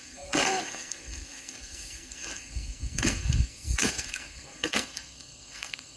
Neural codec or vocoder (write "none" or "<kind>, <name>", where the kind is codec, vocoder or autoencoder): codec, SNAC